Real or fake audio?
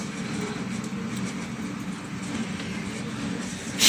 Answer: real